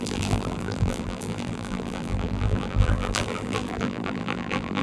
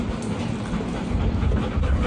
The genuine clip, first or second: second